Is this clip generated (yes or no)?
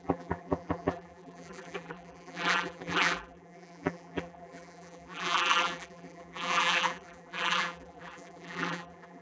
yes